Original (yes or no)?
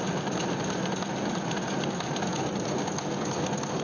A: yes